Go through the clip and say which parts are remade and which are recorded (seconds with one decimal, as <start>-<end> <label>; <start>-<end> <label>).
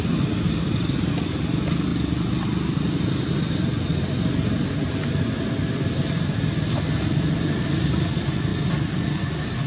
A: 0.0-9.7 recorded